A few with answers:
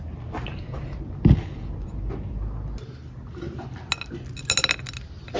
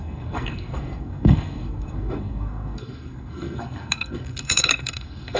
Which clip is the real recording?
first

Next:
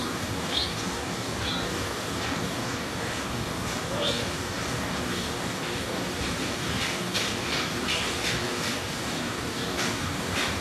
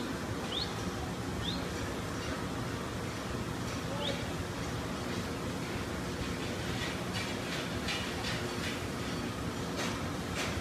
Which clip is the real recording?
second